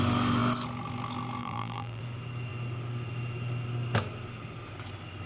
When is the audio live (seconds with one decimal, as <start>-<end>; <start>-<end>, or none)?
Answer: 0.0-1.4; 2.0-5.3

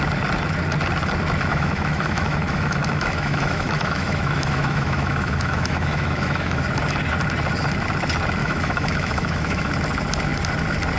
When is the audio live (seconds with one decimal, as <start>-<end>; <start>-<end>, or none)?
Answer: 0.0-1.5; 6.6-8.4; 9.7-11.0